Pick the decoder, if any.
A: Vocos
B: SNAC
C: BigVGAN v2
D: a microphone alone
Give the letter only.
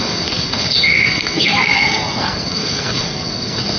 B